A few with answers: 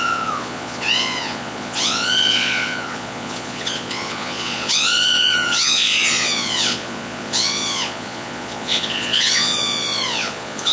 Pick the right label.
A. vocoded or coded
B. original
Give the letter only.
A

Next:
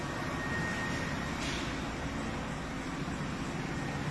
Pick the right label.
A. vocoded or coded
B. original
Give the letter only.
B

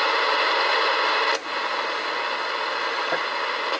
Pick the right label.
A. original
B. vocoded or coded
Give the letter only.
A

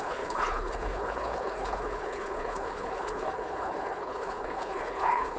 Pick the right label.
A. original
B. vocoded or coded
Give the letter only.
B